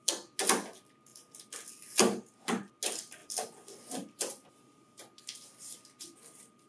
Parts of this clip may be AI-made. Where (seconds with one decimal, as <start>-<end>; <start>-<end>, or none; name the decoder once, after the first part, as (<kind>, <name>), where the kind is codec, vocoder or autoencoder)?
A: none